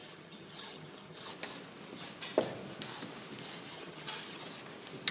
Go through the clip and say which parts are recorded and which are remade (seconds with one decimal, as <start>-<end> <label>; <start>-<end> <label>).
0.0-1.3 remade; 1.3-3.7 recorded; 3.7-4.4 remade; 4.4-5.1 recorded